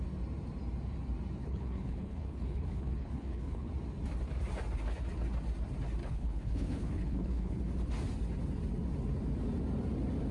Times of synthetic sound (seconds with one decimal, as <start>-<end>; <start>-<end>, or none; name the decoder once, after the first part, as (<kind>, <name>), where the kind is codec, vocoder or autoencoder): 1.4-3.7 (codec, HILCodec); 6.0-7.6